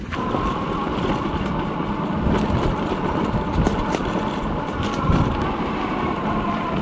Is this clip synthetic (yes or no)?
no